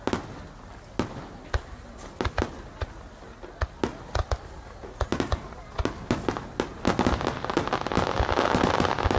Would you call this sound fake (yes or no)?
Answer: no